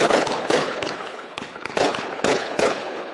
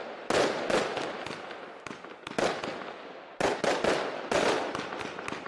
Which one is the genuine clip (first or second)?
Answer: second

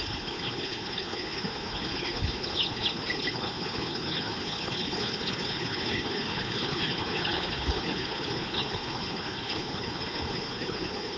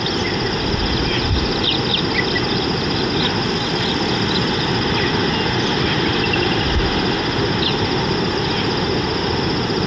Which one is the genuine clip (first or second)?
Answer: second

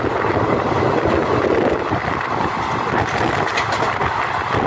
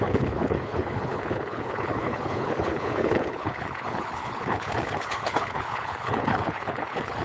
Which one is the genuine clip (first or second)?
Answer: first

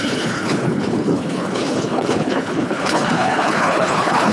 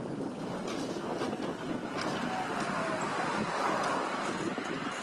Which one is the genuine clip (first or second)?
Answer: second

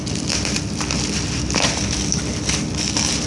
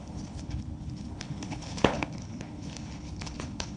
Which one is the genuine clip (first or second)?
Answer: first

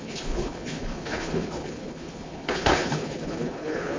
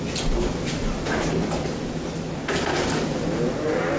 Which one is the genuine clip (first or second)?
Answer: second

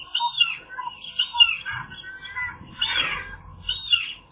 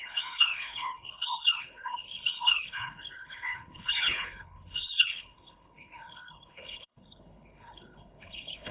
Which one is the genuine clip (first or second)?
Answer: first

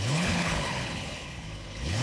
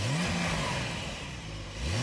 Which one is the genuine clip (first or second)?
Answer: second